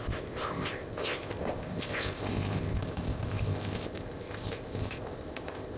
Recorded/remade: remade